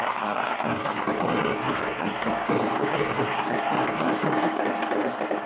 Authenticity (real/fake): fake